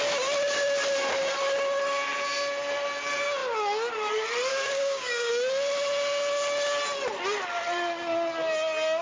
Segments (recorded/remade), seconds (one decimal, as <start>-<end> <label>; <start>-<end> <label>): 0.0-4.5 recorded; 4.5-5.3 remade; 5.3-9.0 recorded